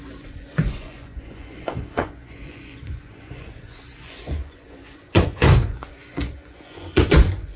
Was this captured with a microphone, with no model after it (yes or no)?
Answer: no